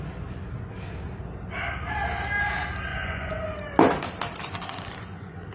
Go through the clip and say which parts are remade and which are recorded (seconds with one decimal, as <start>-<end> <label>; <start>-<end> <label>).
0.0-2.9 recorded; 2.9-3.4 remade; 3.4-4.4 recorded; 4.4-5.5 remade